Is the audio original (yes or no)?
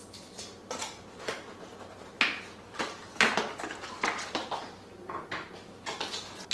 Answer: yes